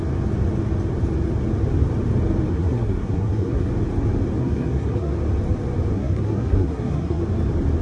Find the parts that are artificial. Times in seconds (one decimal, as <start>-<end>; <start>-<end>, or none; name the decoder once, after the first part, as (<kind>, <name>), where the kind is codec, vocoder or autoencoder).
2.5-3.7 (codec, SNAC); 4.4-5.1; 5.9-7.2